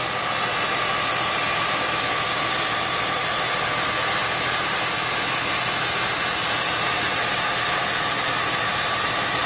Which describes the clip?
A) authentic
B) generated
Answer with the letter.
B